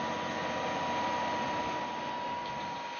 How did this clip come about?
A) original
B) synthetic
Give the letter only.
A